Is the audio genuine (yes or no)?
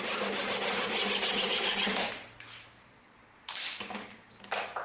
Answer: yes